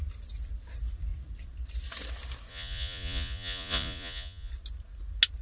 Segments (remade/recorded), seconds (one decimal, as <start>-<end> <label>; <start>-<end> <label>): 0.0-2.5 recorded; 2.5-4.5 remade; 4.5-5.4 recorded